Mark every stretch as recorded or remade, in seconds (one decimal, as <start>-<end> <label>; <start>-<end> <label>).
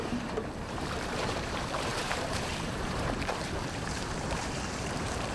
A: 0.0-5.3 remade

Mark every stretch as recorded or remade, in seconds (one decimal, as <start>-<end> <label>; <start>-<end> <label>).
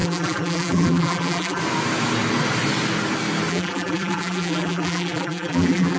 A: 0.0-1.6 remade; 1.6-3.5 recorded; 3.5-6.0 remade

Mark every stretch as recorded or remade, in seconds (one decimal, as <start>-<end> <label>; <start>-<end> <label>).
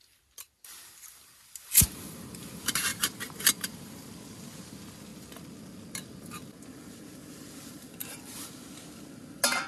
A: 0.0-2.9 recorded; 2.9-4.1 remade; 4.1-9.7 recorded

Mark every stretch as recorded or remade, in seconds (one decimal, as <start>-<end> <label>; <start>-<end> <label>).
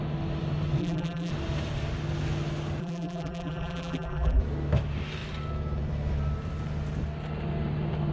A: 0.0-0.8 recorded; 0.8-1.3 remade; 1.3-2.8 recorded; 2.8-4.4 remade; 4.4-8.1 recorded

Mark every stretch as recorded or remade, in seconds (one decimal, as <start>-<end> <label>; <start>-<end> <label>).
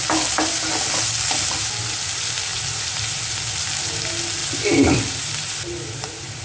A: 0.0-2.5 recorded; 2.5-3.3 remade; 3.3-4.4 recorded; 4.4-6.4 remade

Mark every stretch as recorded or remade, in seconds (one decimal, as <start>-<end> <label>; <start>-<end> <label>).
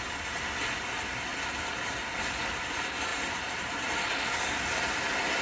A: 0.0-1.3 recorded; 1.3-1.8 remade; 1.8-3.1 recorded; 3.1-4.1 remade; 4.1-5.4 recorded